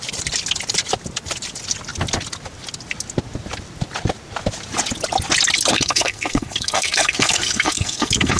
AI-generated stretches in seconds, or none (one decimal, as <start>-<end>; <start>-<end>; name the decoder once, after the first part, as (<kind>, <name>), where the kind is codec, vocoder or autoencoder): 5.7-8.4 (codec, SNAC)